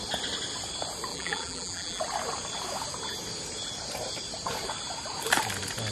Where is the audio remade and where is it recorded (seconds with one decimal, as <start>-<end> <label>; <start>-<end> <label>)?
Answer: 0.0-1.1 recorded; 1.1-2.0 remade; 2.0-5.9 recorded